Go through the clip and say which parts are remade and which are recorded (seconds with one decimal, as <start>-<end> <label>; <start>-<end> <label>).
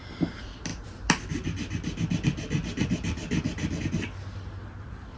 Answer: 0.0-5.2 recorded